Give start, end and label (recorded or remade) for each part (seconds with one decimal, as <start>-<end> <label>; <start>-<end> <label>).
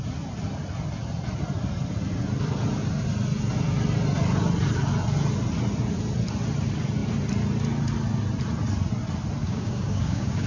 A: 0.0-9.4 recorded; 9.4-10.5 remade